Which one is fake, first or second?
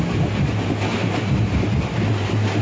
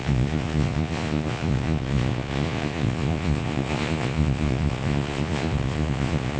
second